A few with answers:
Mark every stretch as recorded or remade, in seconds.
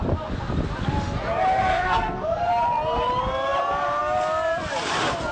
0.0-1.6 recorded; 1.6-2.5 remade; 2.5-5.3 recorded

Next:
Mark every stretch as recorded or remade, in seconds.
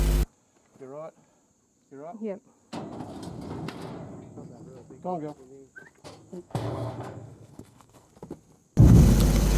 0.0-6.3 recorded; 6.3-8.1 remade; 8.1-9.6 recorded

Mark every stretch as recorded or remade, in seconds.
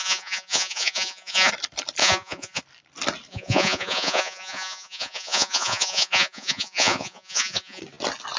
0.0-1.5 remade; 1.5-2.0 recorded; 2.0-2.6 remade; 2.6-3.3 recorded; 3.3-7.8 remade; 7.8-8.4 recorded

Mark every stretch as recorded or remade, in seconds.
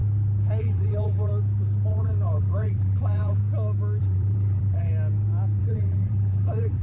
0.0-0.6 recorded; 0.6-1.3 remade; 1.3-1.9 recorded; 1.9-3.4 remade; 3.4-4.0 recorded; 4.0-4.9 remade; 4.9-5.6 recorded; 5.6-6.8 remade